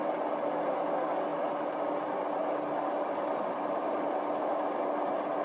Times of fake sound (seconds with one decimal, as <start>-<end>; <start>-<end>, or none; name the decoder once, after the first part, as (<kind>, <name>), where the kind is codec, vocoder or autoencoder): none